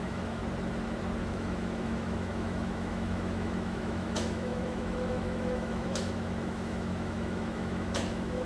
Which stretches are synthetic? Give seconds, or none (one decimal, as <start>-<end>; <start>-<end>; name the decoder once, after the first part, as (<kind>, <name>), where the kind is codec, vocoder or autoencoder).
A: 0.0-0.4 (autoencoder, DAC-VAE); 1.2-8.4